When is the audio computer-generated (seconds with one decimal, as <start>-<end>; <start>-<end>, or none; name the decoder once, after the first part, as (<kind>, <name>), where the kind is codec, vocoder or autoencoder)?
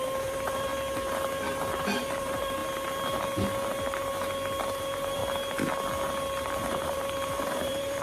0.0-0.7 (vocoder, BigVGAN v2); 2.0-2.6; 4.8-5.2; 6.4-8.0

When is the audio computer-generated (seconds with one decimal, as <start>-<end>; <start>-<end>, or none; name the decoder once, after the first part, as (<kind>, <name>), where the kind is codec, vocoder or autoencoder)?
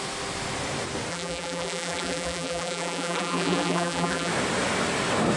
1.1-4.3 (vocoder, BigVGAN v2)